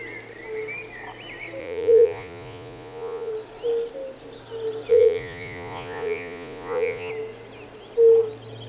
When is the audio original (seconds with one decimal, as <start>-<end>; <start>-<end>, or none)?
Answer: 0.0-1.6; 3.3-4.9; 7.1-8.7